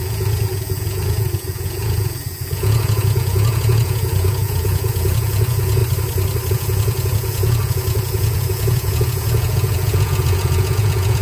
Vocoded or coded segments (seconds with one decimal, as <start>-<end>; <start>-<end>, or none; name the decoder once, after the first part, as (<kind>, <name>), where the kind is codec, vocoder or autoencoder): 0.0-5.8 (vocoder, Vocos); 6.5-11.2